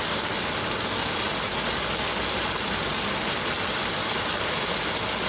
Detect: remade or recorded recorded